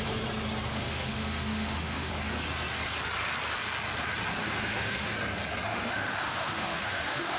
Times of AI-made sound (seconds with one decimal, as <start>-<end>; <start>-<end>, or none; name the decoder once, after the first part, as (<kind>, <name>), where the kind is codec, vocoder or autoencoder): 0.7-2.1 (autoencoder, DAC-VAE); 4.4-5.1; 5.7-7.4